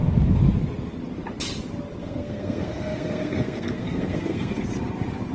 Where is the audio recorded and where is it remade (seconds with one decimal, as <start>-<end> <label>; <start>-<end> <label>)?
0.0-2.0 recorded; 2.0-4.6 remade; 4.6-5.3 recorded